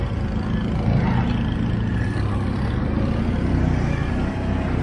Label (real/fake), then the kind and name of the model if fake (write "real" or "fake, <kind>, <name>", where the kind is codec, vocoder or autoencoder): real